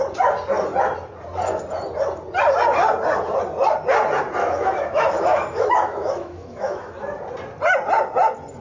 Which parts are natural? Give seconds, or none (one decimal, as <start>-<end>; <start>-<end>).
0.0-4.4; 7.0-8.6